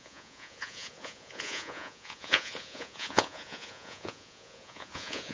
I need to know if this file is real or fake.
fake